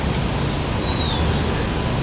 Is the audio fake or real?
real